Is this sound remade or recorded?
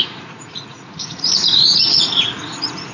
remade